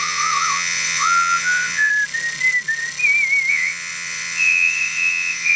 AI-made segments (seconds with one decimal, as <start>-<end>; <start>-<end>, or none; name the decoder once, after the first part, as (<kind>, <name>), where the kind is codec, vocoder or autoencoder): 0.0-1.9 (vocoder, WaveNeXt); 3.5-5.6